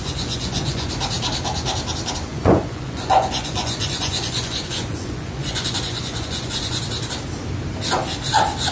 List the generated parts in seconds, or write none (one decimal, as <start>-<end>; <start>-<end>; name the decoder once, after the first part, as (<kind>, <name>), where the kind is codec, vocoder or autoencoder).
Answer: 0.0-0.9 (vocoder, Vocos); 2.3-6.8